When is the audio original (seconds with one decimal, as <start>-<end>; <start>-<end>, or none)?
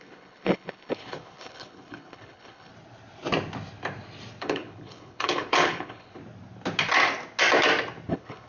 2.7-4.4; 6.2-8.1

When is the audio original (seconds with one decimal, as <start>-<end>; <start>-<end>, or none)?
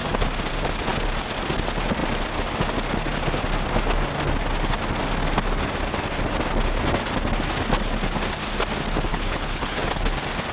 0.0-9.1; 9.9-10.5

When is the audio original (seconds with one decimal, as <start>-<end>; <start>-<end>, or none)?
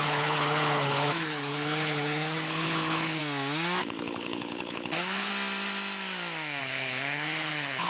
3.2-3.8; 5.3-6.6